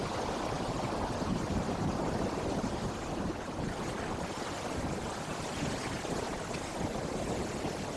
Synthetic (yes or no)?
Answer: no